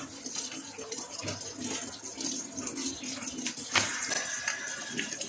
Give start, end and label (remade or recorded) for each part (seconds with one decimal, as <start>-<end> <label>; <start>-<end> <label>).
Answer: 0.0-5.3 recorded